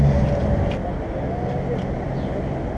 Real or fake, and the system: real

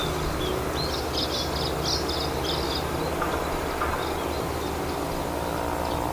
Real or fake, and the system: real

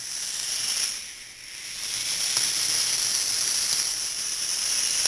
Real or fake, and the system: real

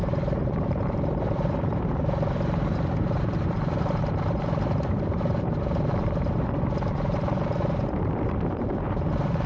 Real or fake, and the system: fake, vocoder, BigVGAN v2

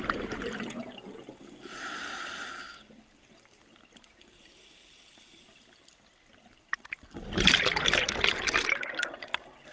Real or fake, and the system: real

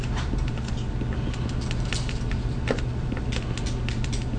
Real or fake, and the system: real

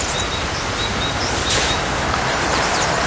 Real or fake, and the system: fake, vocoder, BigVGAN v2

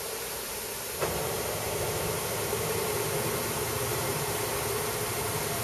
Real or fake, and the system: fake, vocoder, BigVGAN v2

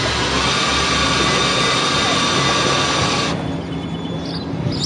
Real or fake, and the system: real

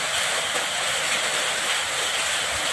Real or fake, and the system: real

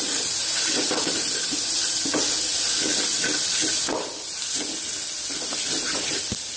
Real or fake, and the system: real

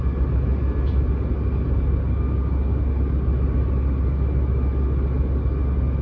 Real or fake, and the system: real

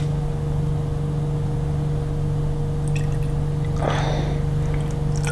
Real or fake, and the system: real